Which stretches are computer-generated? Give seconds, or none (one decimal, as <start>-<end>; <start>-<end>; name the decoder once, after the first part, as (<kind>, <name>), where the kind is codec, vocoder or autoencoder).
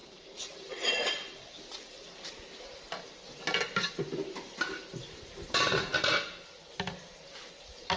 0.0-2.4 (vocoder, BigVGAN v2)